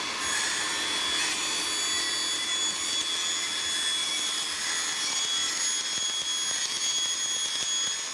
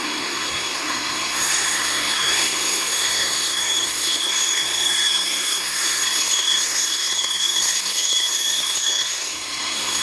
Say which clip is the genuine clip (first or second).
first